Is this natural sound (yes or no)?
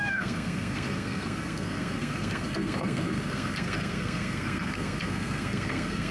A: no